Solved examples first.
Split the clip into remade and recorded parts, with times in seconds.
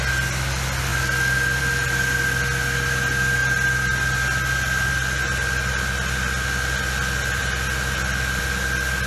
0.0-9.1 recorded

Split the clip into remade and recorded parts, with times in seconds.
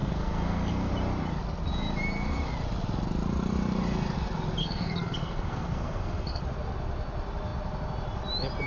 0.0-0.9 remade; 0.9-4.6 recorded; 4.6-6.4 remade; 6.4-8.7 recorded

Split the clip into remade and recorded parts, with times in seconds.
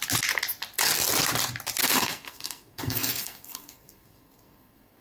0.0-1.8 recorded; 1.8-5.0 remade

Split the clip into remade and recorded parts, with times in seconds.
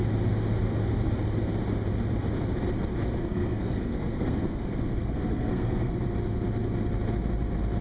0.0-3.2 recorded; 3.2-5.9 remade; 5.9-7.8 recorded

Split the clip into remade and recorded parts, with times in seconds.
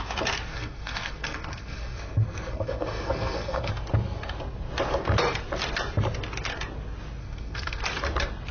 0.0-0.5 recorded; 0.5-3.7 remade; 3.7-7.2 recorded; 7.2-7.8 remade; 7.8-8.5 recorded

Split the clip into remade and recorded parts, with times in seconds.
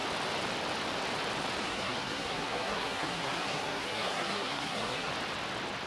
0.0-1.6 recorded; 1.6-5.1 remade; 5.1-5.9 recorded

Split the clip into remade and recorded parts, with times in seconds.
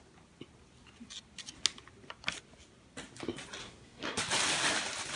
0.0-3.6 recorded; 3.6-4.2 remade; 4.2-5.2 recorded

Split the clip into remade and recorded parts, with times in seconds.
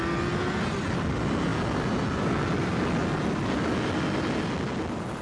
0.0-5.2 recorded